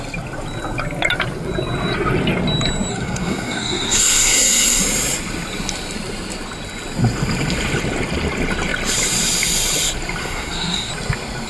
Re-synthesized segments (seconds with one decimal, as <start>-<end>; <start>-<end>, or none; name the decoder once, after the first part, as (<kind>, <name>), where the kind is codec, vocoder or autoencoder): 2.9-4.8 (codec, SNAC); 10.2-10.9